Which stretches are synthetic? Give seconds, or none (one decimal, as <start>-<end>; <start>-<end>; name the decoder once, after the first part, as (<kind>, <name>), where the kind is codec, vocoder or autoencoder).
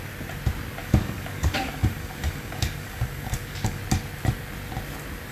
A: 0.8-3.8 (codec, DAC)